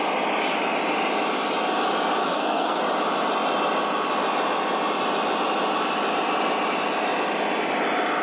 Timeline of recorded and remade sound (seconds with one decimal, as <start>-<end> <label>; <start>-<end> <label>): 0.0-2.2 recorded; 2.2-2.8 remade; 2.8-8.2 recorded